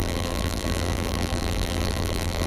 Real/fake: fake